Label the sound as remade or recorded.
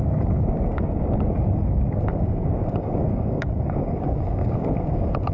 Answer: remade